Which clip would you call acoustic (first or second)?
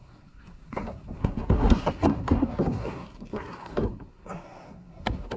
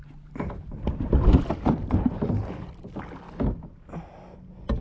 second